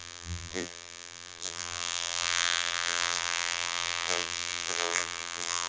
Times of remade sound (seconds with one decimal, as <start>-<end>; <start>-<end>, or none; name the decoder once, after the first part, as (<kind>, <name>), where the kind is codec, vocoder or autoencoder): 0.0-5.7 (vocoder, BigVGAN v2)